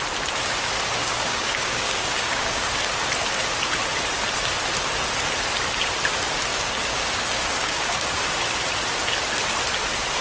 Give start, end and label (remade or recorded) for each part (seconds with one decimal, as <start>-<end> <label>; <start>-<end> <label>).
0.0-1.0 recorded; 1.0-2.8 remade; 2.8-6.5 recorded; 6.5-8.4 remade; 8.4-10.2 recorded